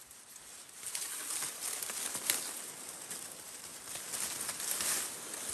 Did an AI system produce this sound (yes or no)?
no